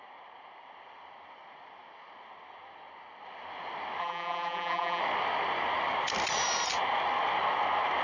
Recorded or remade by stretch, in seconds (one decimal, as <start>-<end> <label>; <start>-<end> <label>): 0.0-4.0 recorded; 4.0-5.0 remade; 5.0-8.0 recorded